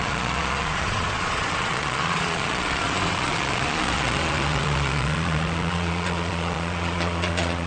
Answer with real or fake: fake